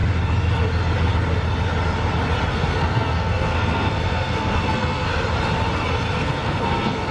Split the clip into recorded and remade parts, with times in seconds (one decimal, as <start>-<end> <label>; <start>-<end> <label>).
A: 0.0-2.5 recorded; 2.5-5.1 remade; 5.1-6.2 recorded; 6.2-7.1 remade